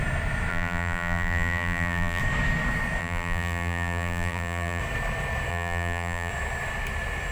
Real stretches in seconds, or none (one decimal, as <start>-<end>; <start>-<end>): 0.0-0.5; 2.2-3.0; 4.8-5.5; 6.3-7.3